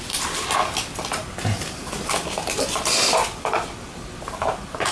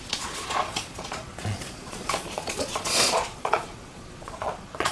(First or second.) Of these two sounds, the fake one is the second